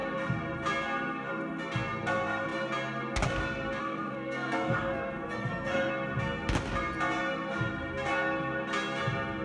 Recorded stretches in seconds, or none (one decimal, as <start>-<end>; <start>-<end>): 0.0-3.8; 5.9-9.4